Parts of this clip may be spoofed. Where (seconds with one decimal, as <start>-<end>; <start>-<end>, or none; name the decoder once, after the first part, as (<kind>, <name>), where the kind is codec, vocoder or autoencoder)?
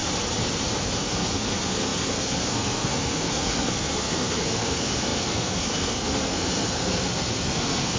0.8-8.0 (codec, SNAC)